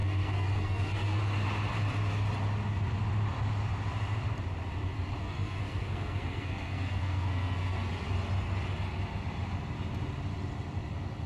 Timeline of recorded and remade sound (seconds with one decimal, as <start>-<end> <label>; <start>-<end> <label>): 0.0-1.2 remade; 1.2-5.2 recorded; 5.2-7.9 remade; 7.9-11.3 recorded

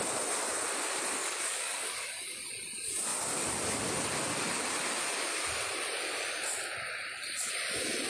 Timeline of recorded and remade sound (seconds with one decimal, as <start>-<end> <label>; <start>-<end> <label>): 0.0-1.2 recorded; 1.2-2.4 remade; 2.4-8.1 recorded